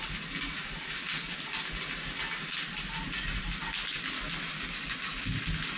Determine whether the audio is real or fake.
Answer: real